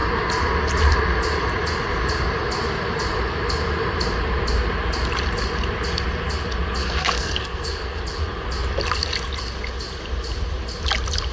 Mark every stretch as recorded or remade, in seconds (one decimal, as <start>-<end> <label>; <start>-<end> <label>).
0.0-6.8 recorded; 6.8-8.0 remade; 8.0-11.3 recorded